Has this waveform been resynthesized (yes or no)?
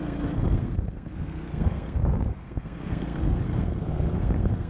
yes